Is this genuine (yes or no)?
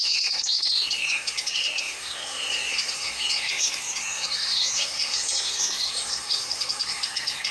no